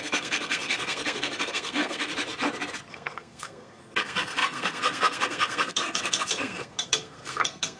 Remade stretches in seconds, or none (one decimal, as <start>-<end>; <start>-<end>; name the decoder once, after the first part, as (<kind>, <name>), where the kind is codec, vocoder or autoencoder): 0.0-2.1 (codec, SNAC); 2.9-7.8